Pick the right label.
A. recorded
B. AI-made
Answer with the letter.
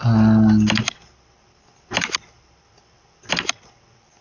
A